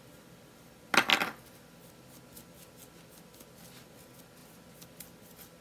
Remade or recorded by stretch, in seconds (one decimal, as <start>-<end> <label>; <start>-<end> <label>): 0.0-5.6 recorded

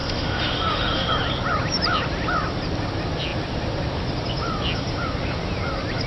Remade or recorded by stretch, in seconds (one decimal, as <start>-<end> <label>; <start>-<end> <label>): 0.0-1.1 remade; 1.1-6.1 recorded

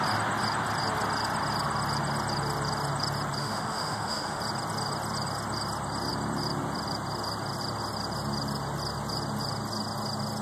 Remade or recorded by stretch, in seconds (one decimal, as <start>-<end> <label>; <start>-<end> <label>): 0.0-3.4 recorded; 3.4-4.4 remade; 4.4-10.4 recorded

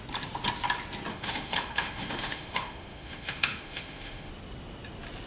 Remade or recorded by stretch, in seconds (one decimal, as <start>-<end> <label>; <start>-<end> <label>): 0.0-1.1 recorded; 1.1-4.3 remade; 4.3-5.3 recorded

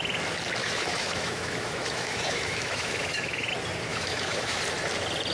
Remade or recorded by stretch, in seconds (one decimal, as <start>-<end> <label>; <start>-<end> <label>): 0.0-0.6 recorded; 0.6-3.5 remade; 3.5-3.9 recorded; 3.9-4.6 remade; 4.6-5.3 recorded

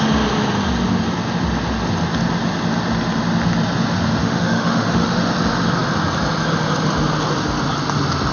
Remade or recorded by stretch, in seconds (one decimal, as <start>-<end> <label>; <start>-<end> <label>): 0.0-4.2 recorded; 4.2-5.1 remade; 5.1-8.3 recorded

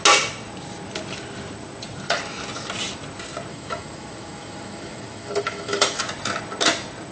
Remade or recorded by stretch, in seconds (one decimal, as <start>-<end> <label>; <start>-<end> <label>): 0.0-3.5 recorded; 3.5-6.0 remade; 6.0-7.1 recorded